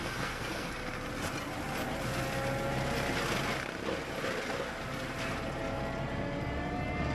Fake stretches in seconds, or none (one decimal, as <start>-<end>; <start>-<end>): 0.0-0.7